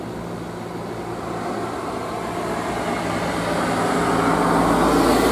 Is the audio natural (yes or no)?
yes